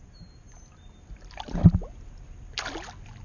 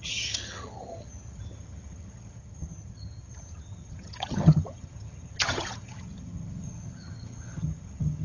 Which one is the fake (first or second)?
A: second